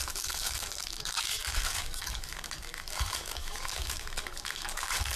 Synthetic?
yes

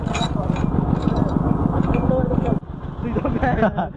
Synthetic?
no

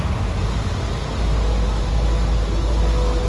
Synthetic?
no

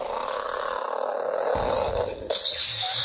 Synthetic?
no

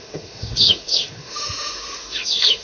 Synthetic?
yes